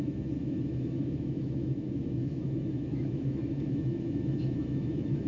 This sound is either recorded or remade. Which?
remade